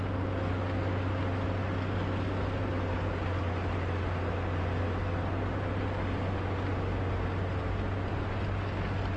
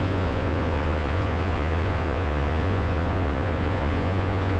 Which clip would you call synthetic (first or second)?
second